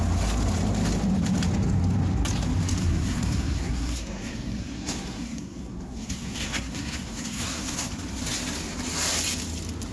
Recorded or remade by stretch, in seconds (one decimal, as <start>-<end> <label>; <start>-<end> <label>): 0.0-2.8 recorded; 2.8-7.9 remade; 7.9-9.9 recorded